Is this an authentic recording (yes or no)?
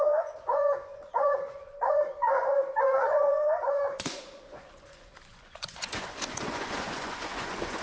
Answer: no